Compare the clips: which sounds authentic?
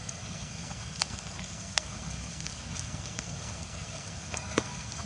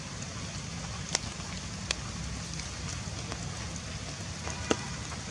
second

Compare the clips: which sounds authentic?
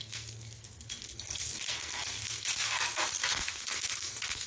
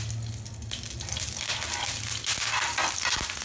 second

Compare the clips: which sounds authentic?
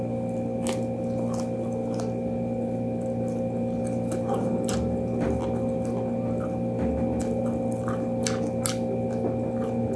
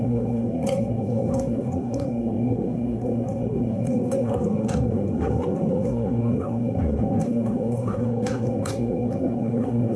first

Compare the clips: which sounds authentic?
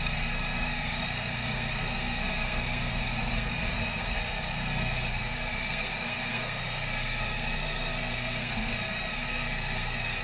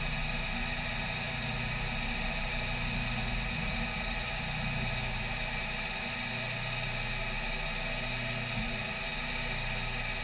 second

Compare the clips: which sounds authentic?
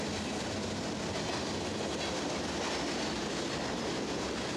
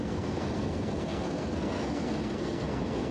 first